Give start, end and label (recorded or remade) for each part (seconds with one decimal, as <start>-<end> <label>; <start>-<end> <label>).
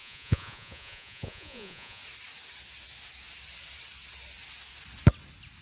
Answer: 0.0-2.0 remade; 2.0-5.6 recorded